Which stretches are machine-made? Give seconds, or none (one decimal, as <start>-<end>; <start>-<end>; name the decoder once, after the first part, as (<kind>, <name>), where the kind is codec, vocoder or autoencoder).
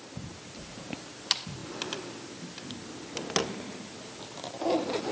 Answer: none